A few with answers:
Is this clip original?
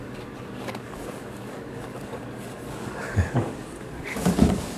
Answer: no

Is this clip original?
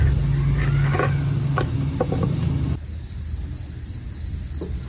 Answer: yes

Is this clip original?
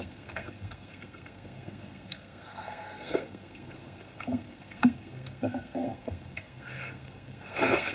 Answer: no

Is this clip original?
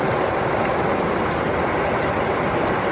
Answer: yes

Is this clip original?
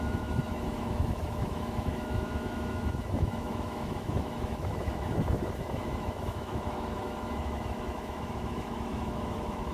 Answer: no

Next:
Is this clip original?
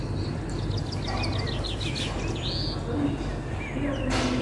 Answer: yes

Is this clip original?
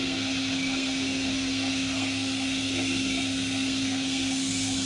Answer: no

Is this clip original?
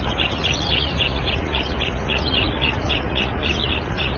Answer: no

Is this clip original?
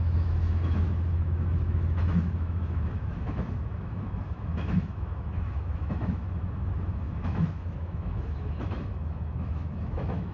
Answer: no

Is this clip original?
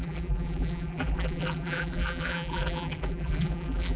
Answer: no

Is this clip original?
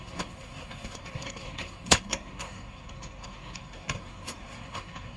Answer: no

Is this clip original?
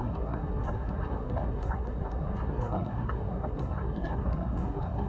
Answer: no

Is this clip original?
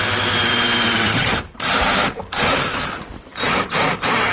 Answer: no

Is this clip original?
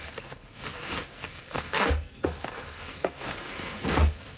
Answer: no